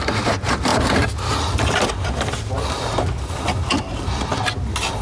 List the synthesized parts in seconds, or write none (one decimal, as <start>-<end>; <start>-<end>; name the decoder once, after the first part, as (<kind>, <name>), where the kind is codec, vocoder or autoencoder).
none

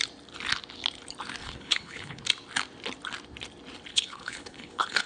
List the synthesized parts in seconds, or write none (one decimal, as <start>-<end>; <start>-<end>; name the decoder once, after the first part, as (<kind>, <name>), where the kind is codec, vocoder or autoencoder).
1.4-2.2 (codec, HILCodec); 3.9-5.1

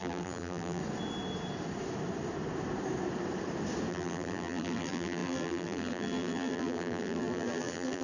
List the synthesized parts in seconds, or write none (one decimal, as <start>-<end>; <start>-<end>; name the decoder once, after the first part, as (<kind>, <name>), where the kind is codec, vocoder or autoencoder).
0.0-0.8 (vocoder, BigVGAN v2); 3.9-8.0

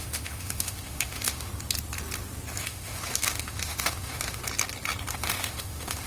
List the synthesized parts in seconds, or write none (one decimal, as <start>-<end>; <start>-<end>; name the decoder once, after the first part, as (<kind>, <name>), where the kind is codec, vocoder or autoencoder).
0.0-1.5 (autoencoder, DAC-VAE); 2.6-4.4; 5.1-6.1

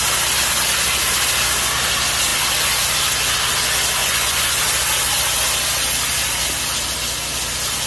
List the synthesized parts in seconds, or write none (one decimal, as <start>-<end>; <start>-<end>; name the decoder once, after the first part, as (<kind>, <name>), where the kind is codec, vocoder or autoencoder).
4.0-4.6 (vocoder, Vocos)